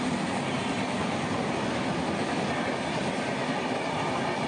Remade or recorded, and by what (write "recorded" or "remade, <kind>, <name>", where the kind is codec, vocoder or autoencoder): recorded